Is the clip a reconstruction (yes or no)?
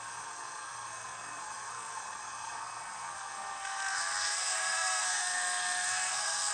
yes